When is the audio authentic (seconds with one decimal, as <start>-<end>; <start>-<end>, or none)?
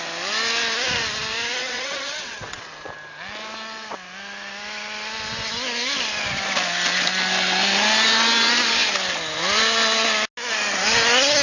0.0-1.6; 2.6-11.4